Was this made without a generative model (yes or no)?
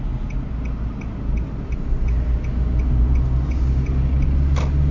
yes